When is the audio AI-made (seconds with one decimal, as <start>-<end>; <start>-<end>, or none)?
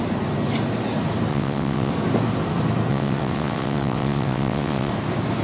1.3-1.9; 2.9-4.9